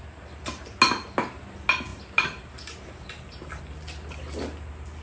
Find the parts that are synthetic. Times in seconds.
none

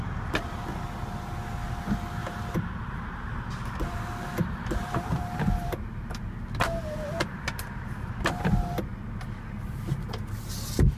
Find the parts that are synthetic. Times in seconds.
none